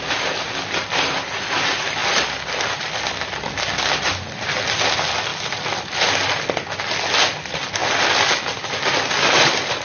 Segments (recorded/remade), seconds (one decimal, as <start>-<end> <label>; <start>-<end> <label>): 0.0-2.0 recorded; 2.0-3.1 remade; 3.1-5.3 recorded; 5.3-6.1 remade; 6.1-9.8 recorded